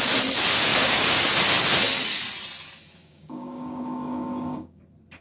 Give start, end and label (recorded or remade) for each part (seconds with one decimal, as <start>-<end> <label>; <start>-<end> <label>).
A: 0.0-0.7 recorded; 0.7-1.3 remade; 1.3-3.0 recorded; 3.0-4.8 remade; 4.8-5.2 recorded